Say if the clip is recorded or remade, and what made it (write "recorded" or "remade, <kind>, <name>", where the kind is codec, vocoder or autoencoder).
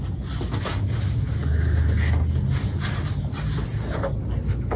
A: recorded